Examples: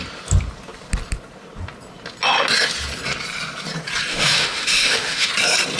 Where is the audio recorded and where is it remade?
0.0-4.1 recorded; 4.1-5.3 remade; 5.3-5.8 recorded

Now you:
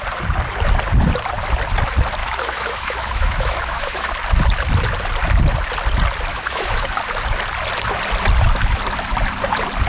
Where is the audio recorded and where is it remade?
0.0-2.2 recorded; 2.2-4.1 remade; 4.1-6.3 recorded; 6.3-7.0 remade; 7.0-9.9 recorded